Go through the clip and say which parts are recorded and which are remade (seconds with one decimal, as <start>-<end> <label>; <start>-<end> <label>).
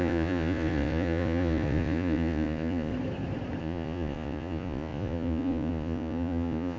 0.0-2.9 remade; 2.9-3.6 recorded; 3.6-6.8 remade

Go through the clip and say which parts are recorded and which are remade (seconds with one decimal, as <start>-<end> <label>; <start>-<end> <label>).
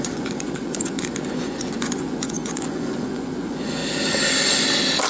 0.0-3.8 remade; 3.8-5.1 recorded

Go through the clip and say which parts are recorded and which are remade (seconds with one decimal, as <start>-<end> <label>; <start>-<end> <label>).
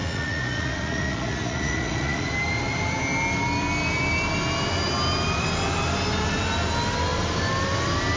0.0-2.3 remade; 2.3-8.2 recorded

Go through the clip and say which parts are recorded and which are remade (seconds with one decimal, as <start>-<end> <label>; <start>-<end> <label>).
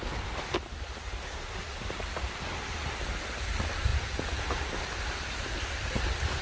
0.0-3.9 recorded; 3.9-4.5 remade; 4.5-6.4 recorded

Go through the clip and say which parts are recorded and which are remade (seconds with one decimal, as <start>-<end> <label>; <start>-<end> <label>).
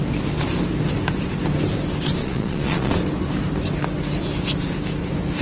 0.0-2.2 recorded; 2.2-2.9 remade; 2.9-5.4 recorded